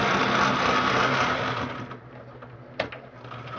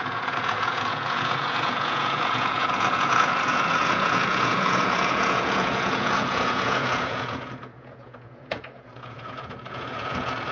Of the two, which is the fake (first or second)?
second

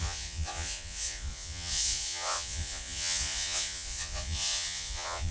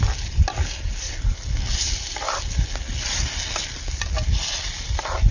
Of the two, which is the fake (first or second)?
first